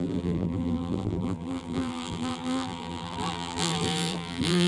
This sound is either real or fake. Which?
fake